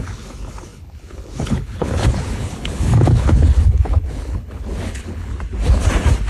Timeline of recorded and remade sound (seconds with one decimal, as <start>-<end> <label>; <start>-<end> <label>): 0.0-5.3 remade; 5.3-6.3 recorded